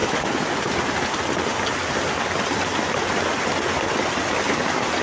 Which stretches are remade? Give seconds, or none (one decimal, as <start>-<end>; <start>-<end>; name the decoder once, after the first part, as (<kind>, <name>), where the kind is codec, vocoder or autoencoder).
0.0-1.1 (vocoder, BigVGAN v2)

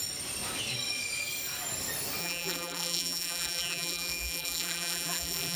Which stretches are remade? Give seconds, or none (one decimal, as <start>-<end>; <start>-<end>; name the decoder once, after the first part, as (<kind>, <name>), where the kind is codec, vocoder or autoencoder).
2.2-5.6 (vocoder, BigVGAN v2)

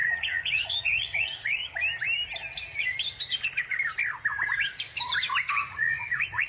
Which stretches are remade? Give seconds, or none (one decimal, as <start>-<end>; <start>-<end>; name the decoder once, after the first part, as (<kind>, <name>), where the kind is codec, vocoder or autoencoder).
0.0-1.6 (vocoder, Vocos); 5.5-6.5

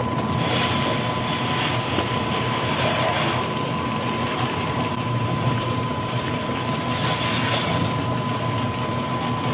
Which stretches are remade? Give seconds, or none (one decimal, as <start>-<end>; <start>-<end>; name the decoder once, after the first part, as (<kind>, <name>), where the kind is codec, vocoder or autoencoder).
4.3-6.4 (vocoder, BigVGAN v2)

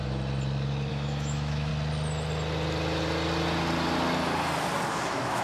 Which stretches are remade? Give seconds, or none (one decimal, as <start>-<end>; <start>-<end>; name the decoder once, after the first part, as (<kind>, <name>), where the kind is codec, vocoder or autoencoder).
0.9-1.7 (autoencoder, DAC-VAE); 4.9-5.4